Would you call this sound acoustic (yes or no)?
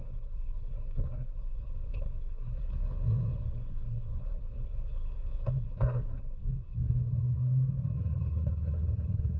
no